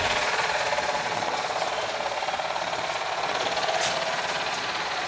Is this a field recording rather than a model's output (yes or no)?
no